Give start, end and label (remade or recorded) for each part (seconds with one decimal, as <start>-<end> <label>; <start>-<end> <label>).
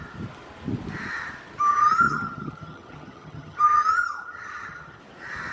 0.0-1.7 recorded; 1.7-5.0 remade; 5.0-5.5 recorded